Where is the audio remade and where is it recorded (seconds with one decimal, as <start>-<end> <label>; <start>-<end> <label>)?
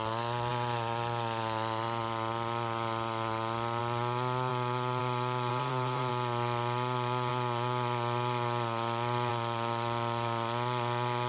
0.0-5.5 recorded; 5.5-6.1 remade; 6.1-11.3 recorded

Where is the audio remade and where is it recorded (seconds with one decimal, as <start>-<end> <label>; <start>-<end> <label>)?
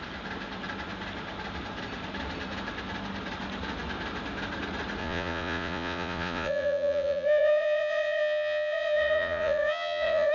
0.0-5.0 recorded; 5.0-10.3 remade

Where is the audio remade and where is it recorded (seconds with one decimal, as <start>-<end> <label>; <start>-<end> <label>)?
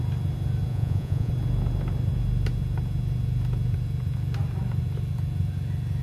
0.0-0.7 recorded; 0.7-1.3 remade; 1.3-6.0 recorded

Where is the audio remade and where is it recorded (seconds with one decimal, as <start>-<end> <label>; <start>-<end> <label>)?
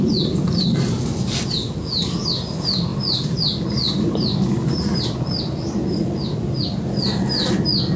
0.0-8.0 recorded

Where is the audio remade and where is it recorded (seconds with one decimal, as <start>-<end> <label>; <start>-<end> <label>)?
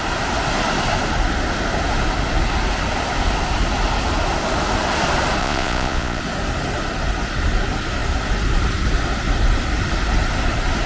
0.0-5.4 recorded; 5.4-6.2 remade; 6.2-10.9 recorded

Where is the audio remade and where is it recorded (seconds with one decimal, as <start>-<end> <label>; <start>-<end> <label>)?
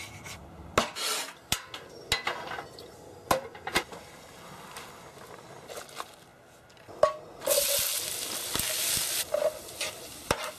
0.0-10.6 recorded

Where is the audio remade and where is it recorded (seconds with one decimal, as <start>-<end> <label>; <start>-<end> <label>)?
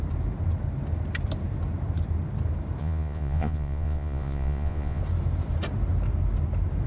0.0-2.8 recorded; 2.8-5.0 remade; 5.0-6.9 recorded